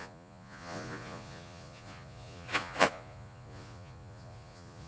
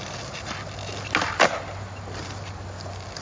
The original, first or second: second